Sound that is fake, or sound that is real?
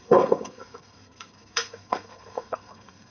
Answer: fake